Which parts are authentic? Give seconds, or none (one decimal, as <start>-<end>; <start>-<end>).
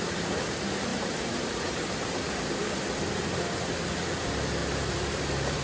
0.0-0.9; 2.8-4.6